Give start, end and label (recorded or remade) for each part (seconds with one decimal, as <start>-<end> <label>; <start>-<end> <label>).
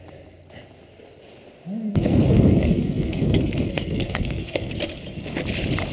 0.0-1.9 recorded; 1.9-4.7 remade; 4.7-5.9 recorded